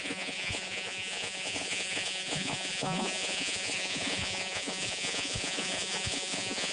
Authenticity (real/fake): fake